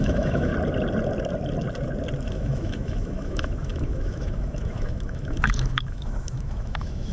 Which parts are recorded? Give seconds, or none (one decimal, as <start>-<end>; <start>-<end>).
0.5-2.3